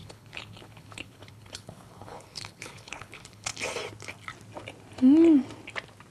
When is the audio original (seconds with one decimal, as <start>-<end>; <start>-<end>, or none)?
3.5-6.1